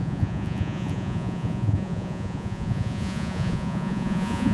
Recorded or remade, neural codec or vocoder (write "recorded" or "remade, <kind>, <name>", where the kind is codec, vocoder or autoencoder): remade, vocoder, Vocos